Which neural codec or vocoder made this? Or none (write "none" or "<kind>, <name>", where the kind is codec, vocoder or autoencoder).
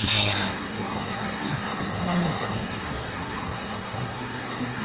codec, SNAC